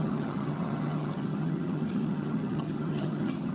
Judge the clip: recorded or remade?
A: remade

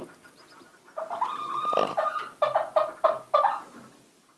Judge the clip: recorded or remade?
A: recorded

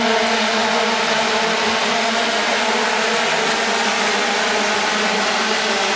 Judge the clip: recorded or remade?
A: recorded